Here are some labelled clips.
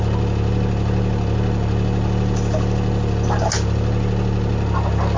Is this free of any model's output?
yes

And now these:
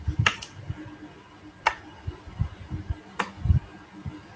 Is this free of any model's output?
yes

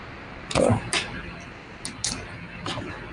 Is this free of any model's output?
yes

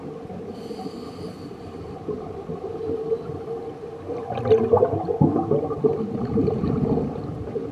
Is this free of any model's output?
yes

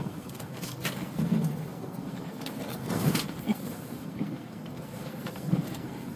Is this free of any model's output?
no